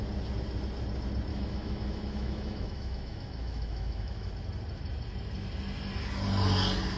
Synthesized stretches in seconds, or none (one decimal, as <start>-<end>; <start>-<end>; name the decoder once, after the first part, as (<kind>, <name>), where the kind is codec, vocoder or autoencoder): 1.3-4.3 (autoencoder, DAC-VAE)